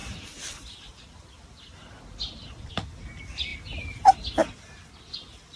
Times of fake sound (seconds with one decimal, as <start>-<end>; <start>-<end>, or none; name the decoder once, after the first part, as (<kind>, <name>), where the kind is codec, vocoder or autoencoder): 0.0-2.7 (vocoder, BigVGAN v2); 3.5-4.9